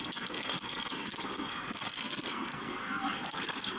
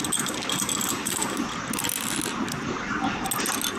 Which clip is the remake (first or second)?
first